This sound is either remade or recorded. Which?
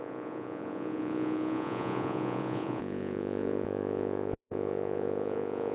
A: remade